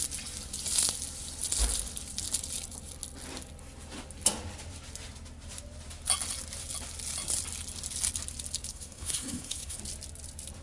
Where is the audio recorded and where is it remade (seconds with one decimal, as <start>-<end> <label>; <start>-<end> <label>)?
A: 0.0-8.7 recorded; 8.7-9.8 remade; 9.8-10.6 recorded

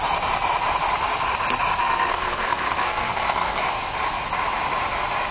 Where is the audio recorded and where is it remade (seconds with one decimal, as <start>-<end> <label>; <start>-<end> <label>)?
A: 0.0-1.8 recorded; 1.8-3.6 remade; 3.6-5.3 recorded

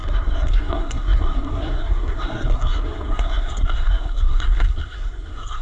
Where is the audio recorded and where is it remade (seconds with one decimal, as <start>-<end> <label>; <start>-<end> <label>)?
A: 0.0-5.6 remade

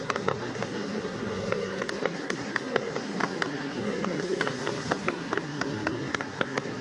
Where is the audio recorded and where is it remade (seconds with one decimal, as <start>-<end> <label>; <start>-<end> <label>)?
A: 0.0-6.8 remade

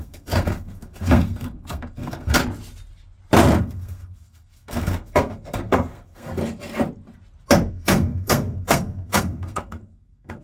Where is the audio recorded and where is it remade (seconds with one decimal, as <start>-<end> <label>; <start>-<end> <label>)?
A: 0.0-2.4 remade; 2.4-3.6 recorded; 3.6-6.4 remade; 6.4-7.7 recorded; 7.7-10.4 remade

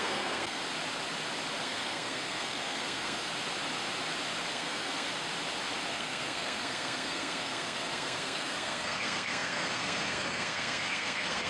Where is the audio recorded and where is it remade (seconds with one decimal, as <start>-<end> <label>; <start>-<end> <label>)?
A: 0.0-0.6 remade; 0.6-1.6 recorded; 1.6-3.3 remade; 3.3-4.5 recorded; 4.5-5.1 remade; 5.1-5.9 recorded; 5.9-11.5 remade